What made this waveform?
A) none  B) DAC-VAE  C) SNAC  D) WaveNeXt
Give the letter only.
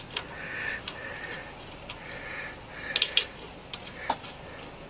A